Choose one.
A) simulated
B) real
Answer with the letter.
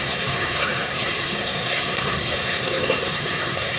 A